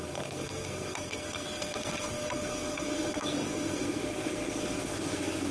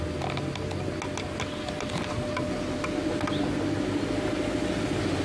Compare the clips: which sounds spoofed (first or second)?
first